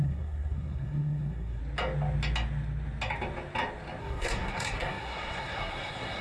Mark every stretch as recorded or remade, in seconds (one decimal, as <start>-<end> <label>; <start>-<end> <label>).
0.0-1.6 remade; 1.6-4.0 recorded; 4.0-6.2 remade